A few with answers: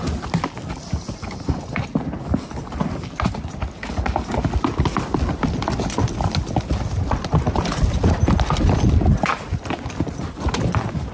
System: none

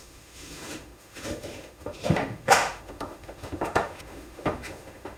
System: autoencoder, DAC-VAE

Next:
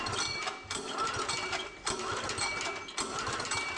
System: none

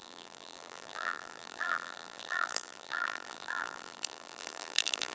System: vocoder, BigVGAN v2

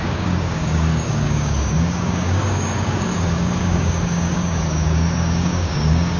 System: codec, DAC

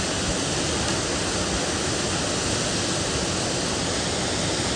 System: none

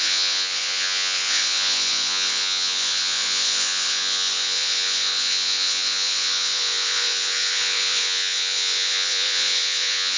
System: vocoder, Vocos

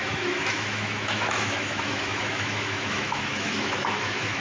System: autoencoder, DAC-VAE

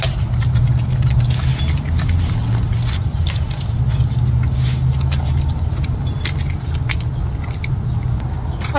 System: none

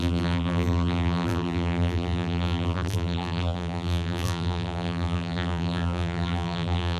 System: vocoder, BigVGAN v2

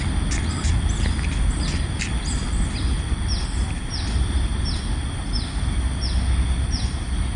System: none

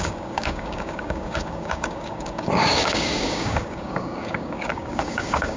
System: codec, DAC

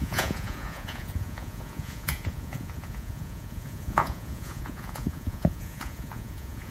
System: vocoder, Vocos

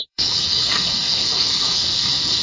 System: codec, SNAC